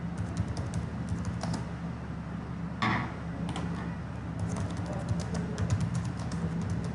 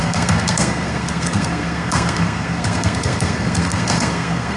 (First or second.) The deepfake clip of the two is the second